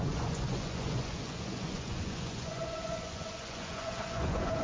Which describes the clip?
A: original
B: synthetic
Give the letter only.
B